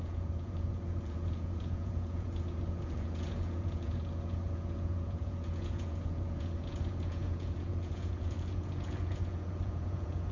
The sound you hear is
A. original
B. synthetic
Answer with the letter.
B